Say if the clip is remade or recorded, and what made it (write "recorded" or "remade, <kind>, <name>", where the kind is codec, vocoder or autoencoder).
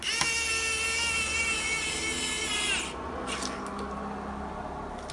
recorded